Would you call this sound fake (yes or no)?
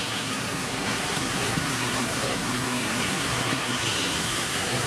yes